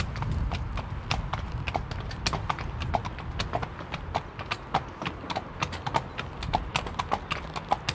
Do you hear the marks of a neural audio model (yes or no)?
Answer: no